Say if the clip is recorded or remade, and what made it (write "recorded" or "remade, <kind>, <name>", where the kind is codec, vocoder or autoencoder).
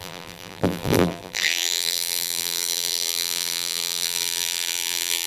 remade, vocoder, BigVGAN v2